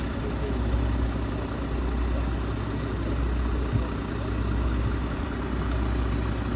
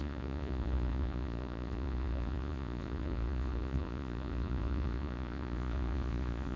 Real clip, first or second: first